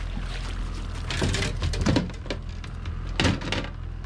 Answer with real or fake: real